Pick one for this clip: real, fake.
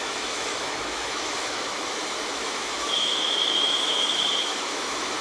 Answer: fake